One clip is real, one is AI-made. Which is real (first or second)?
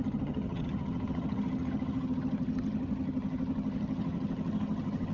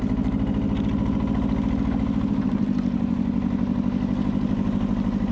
second